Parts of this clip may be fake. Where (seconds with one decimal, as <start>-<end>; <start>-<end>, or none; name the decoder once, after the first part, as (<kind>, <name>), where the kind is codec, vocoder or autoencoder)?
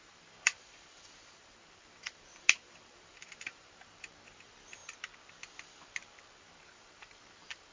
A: 0.0-4.8 (vocoder, BigVGAN v2); 6.4-7.7